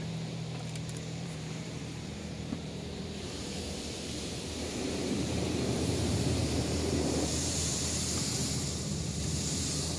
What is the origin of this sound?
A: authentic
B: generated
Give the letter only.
B